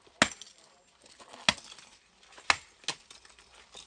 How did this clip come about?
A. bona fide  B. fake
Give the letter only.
A